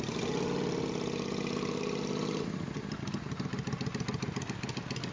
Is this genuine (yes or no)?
yes